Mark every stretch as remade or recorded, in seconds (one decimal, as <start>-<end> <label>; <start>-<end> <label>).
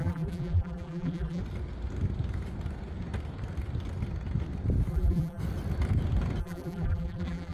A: 0.0-1.4 remade; 1.4-4.9 recorded; 4.9-5.4 remade; 5.4-6.4 recorded; 6.4-7.5 remade